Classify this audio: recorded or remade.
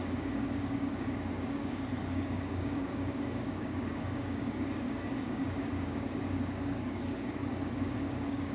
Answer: remade